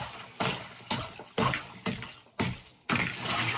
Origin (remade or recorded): recorded